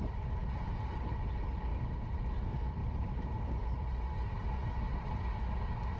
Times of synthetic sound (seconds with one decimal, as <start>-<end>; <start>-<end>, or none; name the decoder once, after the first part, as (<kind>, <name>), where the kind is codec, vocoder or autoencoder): 1.7-2.2 (vocoder, BigVGAN v2); 2.8-3.5